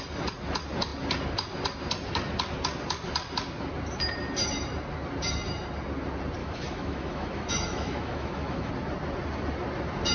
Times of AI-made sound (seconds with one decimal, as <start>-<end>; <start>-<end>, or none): 6.4-8.7